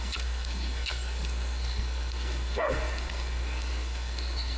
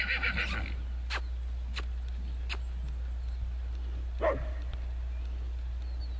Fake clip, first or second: first